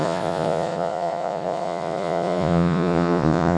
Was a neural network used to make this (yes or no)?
yes